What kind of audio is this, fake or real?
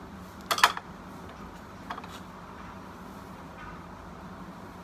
real